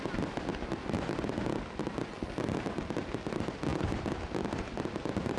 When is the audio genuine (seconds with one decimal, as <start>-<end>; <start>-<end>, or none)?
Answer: 0.0-5.4